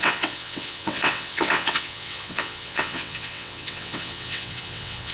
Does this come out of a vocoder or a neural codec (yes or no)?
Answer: yes